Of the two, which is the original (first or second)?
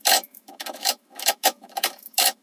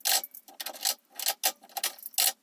second